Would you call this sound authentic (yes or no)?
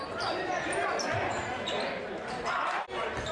no